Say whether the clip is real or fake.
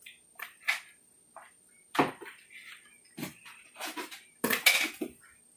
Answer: real